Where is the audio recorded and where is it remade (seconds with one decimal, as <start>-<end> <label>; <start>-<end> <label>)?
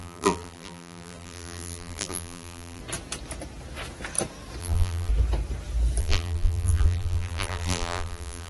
0.0-2.8 remade; 2.8-4.6 recorded; 4.6-5.1 remade; 5.1-6.0 recorded; 6.0-8.5 remade